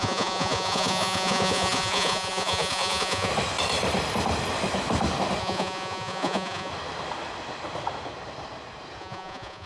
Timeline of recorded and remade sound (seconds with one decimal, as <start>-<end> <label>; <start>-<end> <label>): 0.0-3.3 remade; 3.3-5.4 recorded; 5.4-6.7 remade; 6.7-9.0 recorded; 9.0-9.7 remade